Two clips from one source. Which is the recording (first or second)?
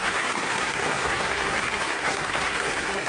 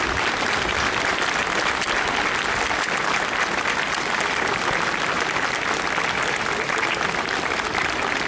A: second